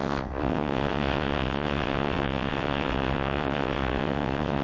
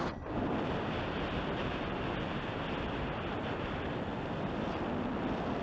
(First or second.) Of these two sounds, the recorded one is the second